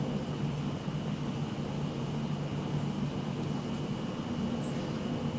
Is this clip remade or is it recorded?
recorded